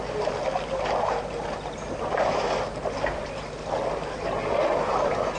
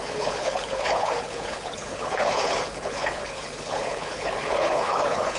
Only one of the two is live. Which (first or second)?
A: first